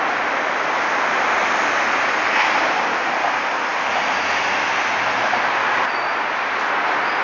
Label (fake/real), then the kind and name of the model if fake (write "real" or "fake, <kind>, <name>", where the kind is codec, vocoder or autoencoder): real